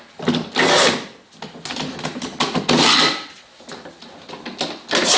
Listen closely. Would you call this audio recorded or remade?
recorded